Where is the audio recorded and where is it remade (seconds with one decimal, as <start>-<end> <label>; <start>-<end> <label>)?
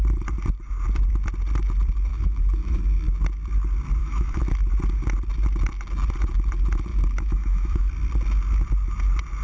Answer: 0.0-2.1 recorded; 2.1-2.8 remade; 2.8-4.0 recorded; 4.0-4.5 remade; 4.5-6.9 recorded; 6.9-7.9 remade; 7.9-9.4 recorded